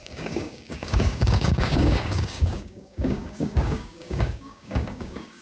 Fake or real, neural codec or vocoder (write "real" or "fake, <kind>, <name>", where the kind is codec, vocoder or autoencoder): fake, codec, DAC